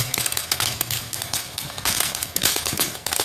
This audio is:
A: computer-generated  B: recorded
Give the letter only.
A